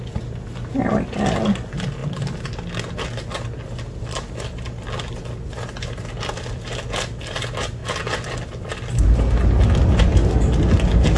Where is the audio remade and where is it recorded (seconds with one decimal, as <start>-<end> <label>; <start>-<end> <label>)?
0.0-11.2 recorded